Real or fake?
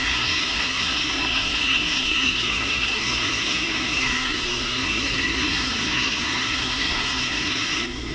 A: fake